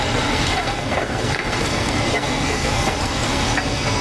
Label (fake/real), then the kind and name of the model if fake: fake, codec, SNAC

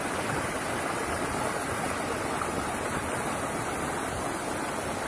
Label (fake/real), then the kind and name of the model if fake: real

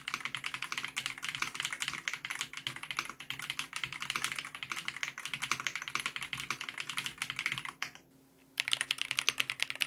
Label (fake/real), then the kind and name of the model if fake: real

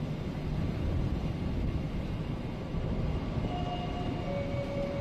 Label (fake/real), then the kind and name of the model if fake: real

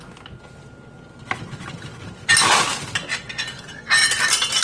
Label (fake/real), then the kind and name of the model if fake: real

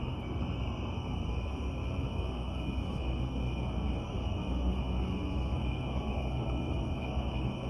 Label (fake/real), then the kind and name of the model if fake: fake, codec, SNAC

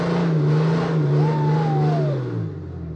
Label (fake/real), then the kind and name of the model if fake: real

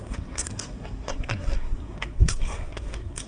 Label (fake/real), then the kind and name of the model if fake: fake, codec, SNAC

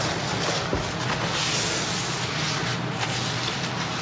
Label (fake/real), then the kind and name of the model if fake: real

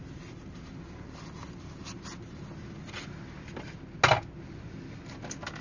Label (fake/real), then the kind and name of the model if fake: real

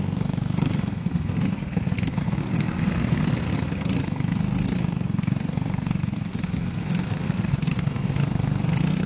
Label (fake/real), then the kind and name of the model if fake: fake, codec, SNAC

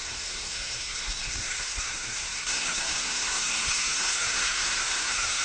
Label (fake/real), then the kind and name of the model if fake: fake, codec, SNAC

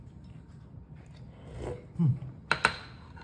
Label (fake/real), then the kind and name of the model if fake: real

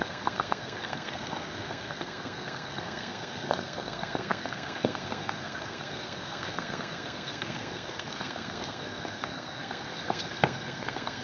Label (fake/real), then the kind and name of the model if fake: fake, codec, SNAC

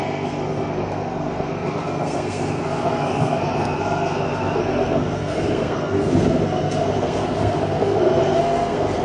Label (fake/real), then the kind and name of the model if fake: fake, codec, SNAC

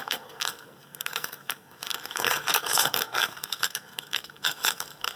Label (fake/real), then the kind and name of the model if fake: fake, codec, SNAC